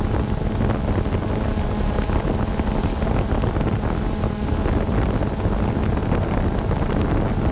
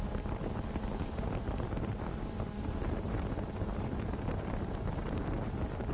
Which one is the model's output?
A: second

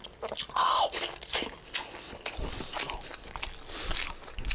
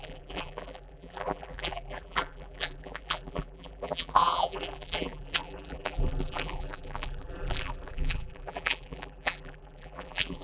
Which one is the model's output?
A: second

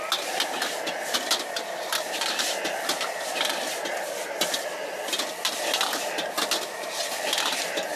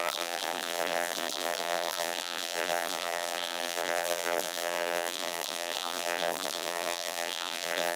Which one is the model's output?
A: second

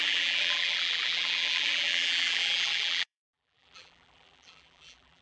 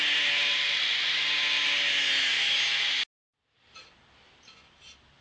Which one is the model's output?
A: first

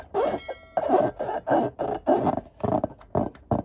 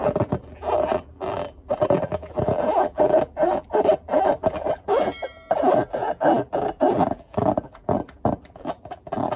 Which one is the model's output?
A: second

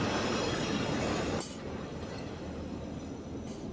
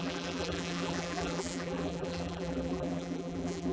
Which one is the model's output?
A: second